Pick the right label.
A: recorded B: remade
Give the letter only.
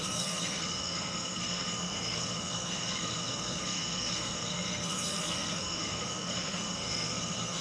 B